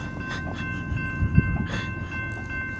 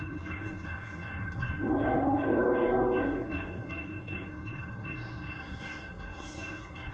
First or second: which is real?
first